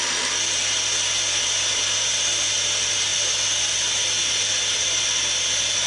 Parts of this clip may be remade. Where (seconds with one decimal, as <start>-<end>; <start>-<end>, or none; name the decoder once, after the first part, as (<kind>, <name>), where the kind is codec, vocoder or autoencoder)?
none